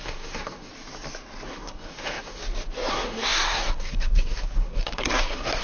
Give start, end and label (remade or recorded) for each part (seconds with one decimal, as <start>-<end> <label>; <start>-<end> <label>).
0.0-0.7 remade; 0.7-1.5 recorded; 1.5-2.4 remade; 2.4-2.9 recorded; 2.9-5.6 remade

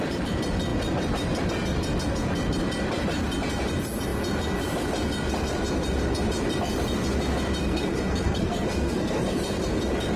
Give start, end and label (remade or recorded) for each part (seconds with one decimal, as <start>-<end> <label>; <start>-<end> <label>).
0.0-7.6 recorded; 7.6-9.3 remade; 9.3-10.2 recorded

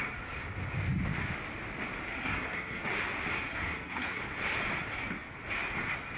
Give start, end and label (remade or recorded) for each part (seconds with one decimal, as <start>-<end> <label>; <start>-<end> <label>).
0.0-2.1 recorded; 2.1-2.8 remade; 2.8-3.5 recorded; 3.5-4.2 remade; 4.2-6.2 recorded

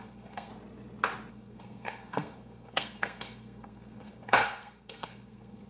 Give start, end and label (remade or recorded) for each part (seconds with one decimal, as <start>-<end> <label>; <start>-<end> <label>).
0.0-0.5 remade; 0.5-1.3 recorded; 1.3-5.7 remade

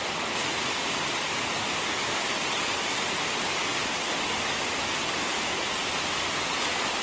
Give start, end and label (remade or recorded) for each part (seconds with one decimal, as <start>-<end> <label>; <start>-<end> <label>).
0.0-7.0 recorded